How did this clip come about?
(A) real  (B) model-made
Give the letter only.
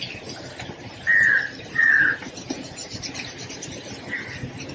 A